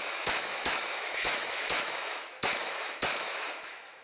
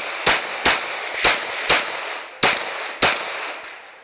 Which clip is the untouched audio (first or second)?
second